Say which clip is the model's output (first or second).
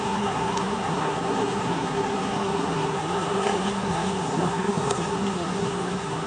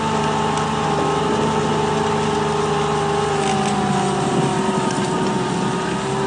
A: first